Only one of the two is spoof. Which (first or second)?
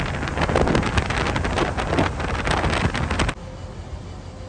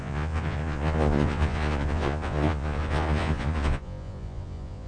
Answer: second